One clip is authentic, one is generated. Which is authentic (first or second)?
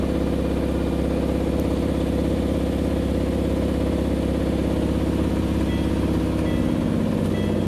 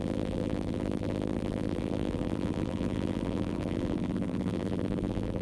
first